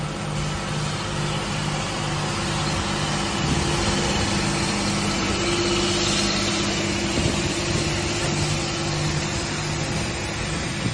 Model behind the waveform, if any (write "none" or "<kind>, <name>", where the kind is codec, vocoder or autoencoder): none